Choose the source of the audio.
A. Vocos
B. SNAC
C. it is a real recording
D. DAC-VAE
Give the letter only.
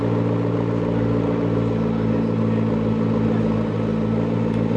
C